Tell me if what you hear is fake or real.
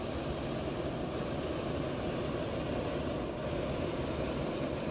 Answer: real